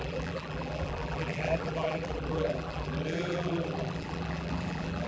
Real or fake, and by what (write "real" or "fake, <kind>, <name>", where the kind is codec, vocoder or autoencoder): fake, vocoder, BigVGAN v2